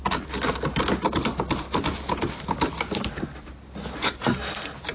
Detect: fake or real real